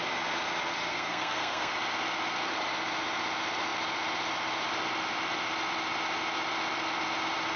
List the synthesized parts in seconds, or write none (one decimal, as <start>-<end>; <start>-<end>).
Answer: 0.9-1.7